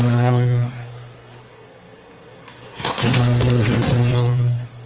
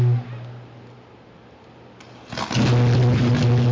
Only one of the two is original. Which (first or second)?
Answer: second